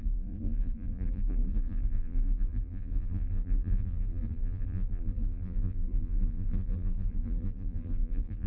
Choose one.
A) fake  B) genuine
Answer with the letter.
A